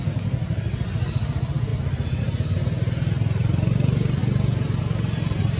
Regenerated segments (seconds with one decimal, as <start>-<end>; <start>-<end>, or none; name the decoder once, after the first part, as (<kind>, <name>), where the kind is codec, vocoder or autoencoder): none